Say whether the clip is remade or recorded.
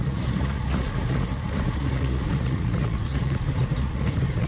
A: remade